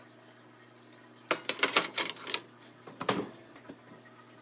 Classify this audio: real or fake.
real